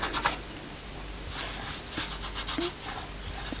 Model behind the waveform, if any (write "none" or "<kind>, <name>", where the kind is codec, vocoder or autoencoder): none